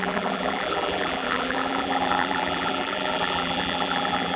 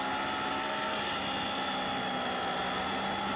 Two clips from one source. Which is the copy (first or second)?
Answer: first